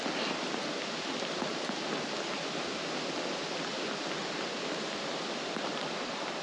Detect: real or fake real